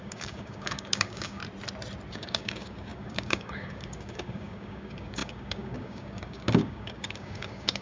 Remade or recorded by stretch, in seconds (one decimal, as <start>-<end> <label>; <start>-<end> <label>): 0.0-1.4 remade; 1.4-2.1 recorded; 2.1-7.8 remade